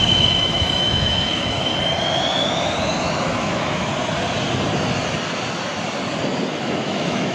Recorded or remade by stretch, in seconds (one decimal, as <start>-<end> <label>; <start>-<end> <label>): 0.0-1.7 remade; 1.7-3.3 recorded; 3.3-3.9 remade; 3.9-6.6 recorded; 6.6-7.3 remade

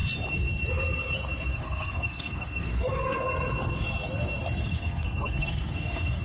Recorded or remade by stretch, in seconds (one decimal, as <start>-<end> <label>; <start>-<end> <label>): 0.0-1.5 recorded; 1.5-2.9 remade; 2.9-4.6 recorded; 4.6-6.2 remade

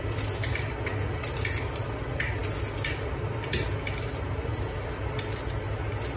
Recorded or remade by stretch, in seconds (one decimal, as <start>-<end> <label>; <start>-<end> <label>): 0.0-6.2 recorded

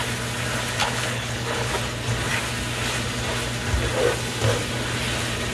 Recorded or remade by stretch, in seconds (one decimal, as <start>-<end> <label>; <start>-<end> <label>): 0.0-0.8 recorded; 0.8-1.7 remade; 1.7-5.5 recorded

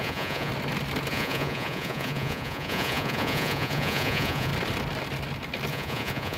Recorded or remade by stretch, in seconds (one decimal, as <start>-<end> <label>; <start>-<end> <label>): 0.0-0.5 remade; 0.5-1.1 recorded; 1.1-4.5 remade; 4.5-5.7 recorded; 5.7-6.4 remade

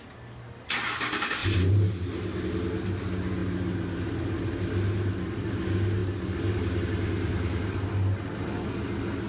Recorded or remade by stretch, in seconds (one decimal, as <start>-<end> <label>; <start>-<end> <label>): 0.0-1.4 recorded; 1.4-2.1 remade; 2.1-9.3 recorded

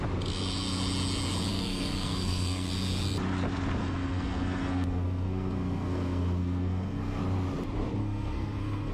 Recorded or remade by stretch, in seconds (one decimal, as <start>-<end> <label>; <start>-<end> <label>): 0.0-1.5 recorded; 1.5-2.7 remade; 2.7-3.8 recorded; 3.8-7.2 remade; 7.2-8.0 recorded; 8.0-8.9 remade

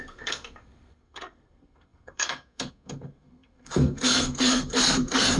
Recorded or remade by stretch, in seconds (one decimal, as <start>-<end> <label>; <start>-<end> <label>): 0.0-5.4 remade